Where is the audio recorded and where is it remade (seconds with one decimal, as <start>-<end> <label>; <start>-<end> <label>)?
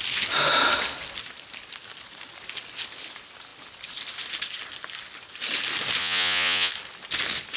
0.0-6.0 recorded; 6.0-6.7 remade; 6.7-7.6 recorded